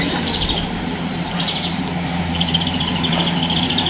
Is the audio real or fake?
fake